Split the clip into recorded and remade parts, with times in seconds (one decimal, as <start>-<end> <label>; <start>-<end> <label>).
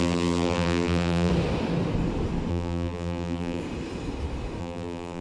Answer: 0.0-1.3 remade; 1.3-2.5 recorded; 2.5-3.6 remade; 3.6-4.6 recorded; 4.6-5.2 remade